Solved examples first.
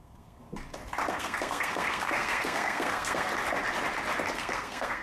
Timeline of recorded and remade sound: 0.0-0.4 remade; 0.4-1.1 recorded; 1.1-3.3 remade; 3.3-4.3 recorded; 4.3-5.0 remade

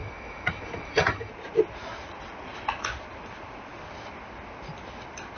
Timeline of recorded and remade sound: 0.0-1.3 remade; 1.3-5.4 recorded

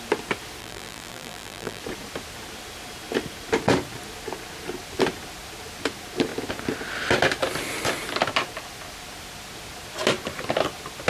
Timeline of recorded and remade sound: 0.0-0.6 recorded; 0.6-1.8 remade; 1.8-11.1 recorded

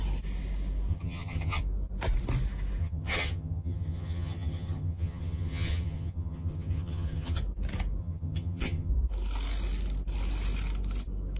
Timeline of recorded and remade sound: 0.0-0.9 recorded; 0.9-1.6 remade; 1.6-2.8 recorded; 2.8-7.4 remade; 7.4-8.0 recorded; 8.0-8.9 remade; 8.9-11.4 recorded

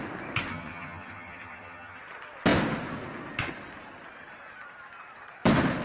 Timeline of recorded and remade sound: 0.0-0.5 recorded; 0.5-2.0 remade; 2.0-5.8 recorded

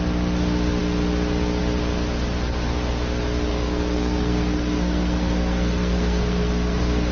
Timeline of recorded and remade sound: 0.0-3.5 recorded; 3.5-7.1 remade

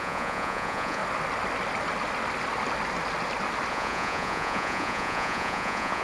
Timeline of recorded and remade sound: 0.0-1.0 remade; 1.0-3.7 recorded; 3.7-6.0 remade